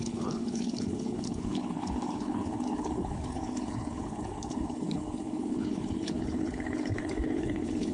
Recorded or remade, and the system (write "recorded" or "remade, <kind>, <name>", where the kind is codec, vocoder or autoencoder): remade, codec, HILCodec